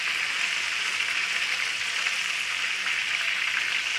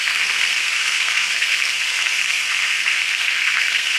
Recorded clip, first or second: first